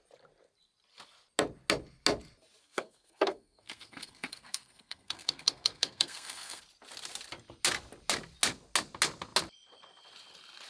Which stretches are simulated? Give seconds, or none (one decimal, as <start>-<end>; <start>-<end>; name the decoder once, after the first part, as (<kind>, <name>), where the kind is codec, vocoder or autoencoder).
2.6-6.6 (codec, SNAC)